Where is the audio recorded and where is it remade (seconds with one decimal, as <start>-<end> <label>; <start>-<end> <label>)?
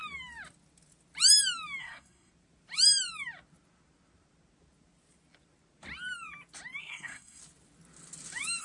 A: 0.0-1.8 recorded; 1.8-2.3 remade; 2.3-6.8 recorded; 6.8-7.4 remade; 7.4-8.6 recorded